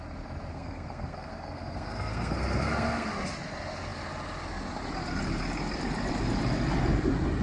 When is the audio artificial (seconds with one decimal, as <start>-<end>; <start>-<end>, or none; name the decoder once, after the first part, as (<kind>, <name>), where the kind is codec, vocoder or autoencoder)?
0.5-3.1 (codec, SNAC)

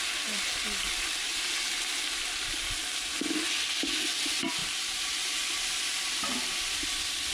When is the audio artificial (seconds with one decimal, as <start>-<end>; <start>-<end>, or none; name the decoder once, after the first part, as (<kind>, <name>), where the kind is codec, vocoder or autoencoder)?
1.3-2.4 (vocoder, BigVGAN v2); 4.6-5.3

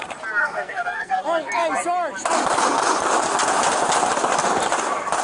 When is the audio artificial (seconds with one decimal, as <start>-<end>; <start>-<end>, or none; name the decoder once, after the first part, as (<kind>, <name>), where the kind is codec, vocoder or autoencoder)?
0.4-1.2 (codec, SNAC)

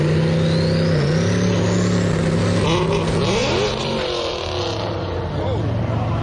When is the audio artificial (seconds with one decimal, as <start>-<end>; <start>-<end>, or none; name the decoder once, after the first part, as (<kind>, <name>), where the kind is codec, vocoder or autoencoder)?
none

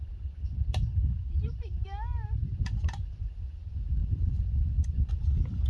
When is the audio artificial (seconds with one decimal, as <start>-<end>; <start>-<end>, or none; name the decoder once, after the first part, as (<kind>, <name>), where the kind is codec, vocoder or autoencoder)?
none

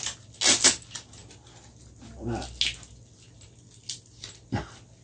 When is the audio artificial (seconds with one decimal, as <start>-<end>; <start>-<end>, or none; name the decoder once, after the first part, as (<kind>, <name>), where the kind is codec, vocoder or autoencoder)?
none

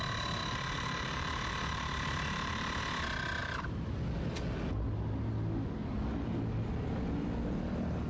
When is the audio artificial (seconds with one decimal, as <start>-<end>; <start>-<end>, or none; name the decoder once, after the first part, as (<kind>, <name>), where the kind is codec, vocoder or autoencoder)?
0.4-2.8 (vocoder, BigVGAN v2)